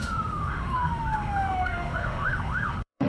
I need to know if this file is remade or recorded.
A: remade